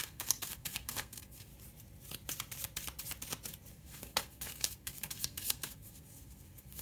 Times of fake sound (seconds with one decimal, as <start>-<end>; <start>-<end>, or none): 0.0-1.5; 3.7-6.8